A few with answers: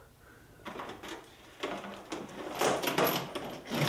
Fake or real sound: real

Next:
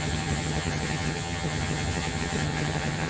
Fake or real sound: fake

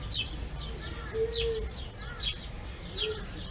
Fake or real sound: real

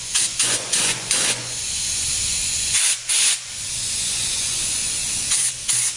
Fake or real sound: fake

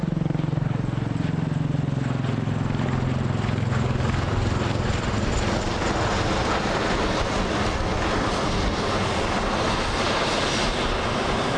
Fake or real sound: real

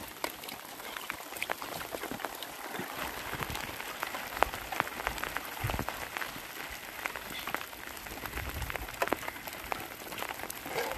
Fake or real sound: real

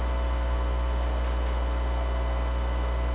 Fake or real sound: real